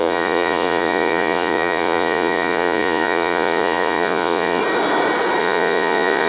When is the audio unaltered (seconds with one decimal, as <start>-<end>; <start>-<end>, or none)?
4.6-5.4

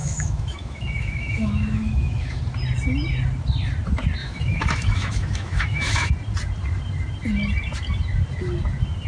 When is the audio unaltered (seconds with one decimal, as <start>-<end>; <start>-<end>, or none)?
2.4-4.2; 6.1-9.1

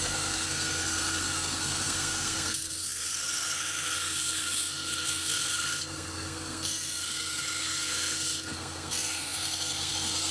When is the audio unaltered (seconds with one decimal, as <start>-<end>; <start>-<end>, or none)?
none

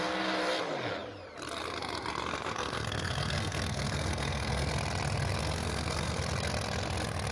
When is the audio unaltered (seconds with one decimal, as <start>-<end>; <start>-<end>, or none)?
0.0-2.3; 4.7-5.4; 6.2-7.3

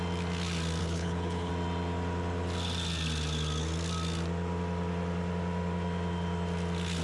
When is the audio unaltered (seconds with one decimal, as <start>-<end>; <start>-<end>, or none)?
0.0-0.8; 1.5-7.0

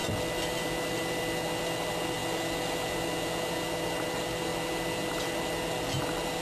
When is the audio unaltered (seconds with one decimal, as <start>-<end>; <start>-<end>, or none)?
0.0-6.4

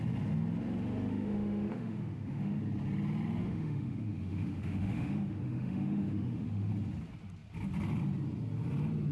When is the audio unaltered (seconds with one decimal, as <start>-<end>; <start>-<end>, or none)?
0.0-1.1; 2.6-3.4; 6.7-9.1

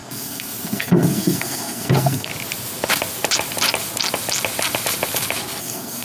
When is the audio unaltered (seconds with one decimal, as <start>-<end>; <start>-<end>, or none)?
2.3-5.6